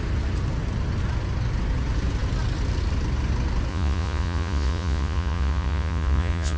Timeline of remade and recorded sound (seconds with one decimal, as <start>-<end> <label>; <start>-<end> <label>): 0.0-3.7 recorded; 3.7-6.6 remade